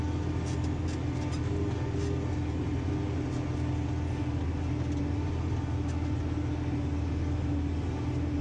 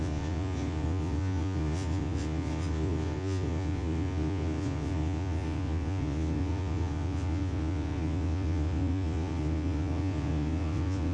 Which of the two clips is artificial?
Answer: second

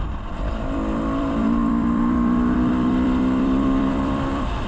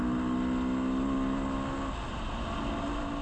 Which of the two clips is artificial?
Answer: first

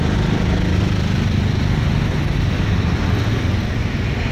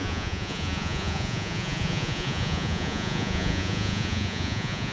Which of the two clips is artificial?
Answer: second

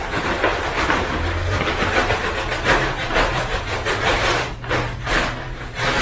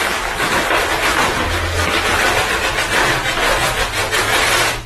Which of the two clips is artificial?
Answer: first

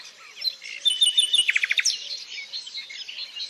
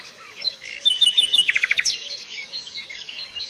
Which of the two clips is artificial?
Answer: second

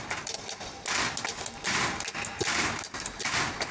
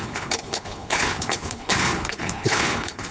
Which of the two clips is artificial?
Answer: second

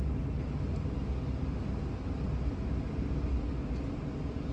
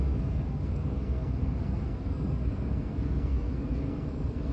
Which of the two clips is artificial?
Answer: second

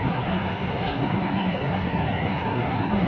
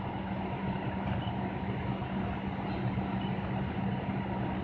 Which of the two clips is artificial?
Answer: first